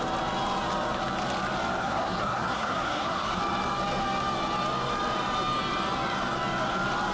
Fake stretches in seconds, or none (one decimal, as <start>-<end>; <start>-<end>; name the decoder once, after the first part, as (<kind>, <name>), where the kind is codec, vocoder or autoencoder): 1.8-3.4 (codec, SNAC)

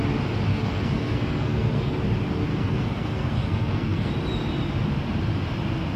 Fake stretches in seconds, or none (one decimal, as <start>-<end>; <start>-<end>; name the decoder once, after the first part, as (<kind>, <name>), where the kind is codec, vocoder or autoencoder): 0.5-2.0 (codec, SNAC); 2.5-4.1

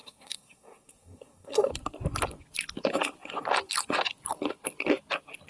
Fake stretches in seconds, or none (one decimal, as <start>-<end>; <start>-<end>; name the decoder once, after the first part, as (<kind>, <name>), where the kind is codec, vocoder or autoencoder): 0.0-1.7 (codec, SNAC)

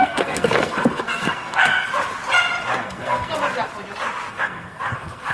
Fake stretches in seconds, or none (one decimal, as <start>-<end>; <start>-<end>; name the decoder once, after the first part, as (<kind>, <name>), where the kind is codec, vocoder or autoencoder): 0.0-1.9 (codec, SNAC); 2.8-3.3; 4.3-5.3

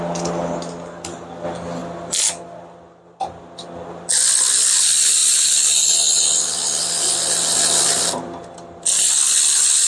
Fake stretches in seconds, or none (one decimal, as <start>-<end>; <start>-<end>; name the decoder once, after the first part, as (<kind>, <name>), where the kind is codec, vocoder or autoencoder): none